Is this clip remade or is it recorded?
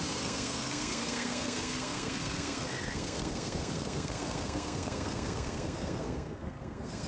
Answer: remade